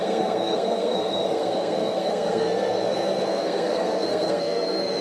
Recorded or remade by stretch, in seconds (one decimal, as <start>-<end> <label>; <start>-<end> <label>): 0.0-5.0 remade